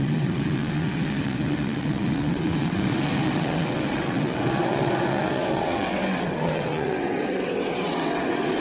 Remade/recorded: remade